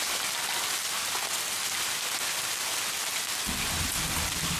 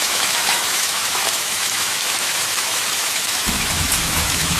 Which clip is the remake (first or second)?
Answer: second